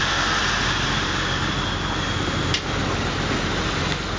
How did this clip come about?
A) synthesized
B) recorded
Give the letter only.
B